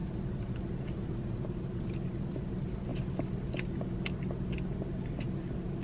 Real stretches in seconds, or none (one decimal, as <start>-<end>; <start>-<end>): 2.3-5.8